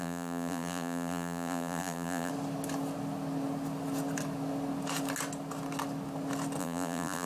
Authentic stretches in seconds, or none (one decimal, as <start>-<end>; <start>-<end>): 2.3-6.6